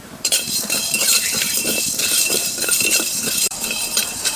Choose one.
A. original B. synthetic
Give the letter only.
B